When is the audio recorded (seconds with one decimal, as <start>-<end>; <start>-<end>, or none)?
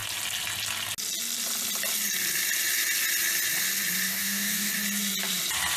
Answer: 0.0-4.1; 4.7-5.8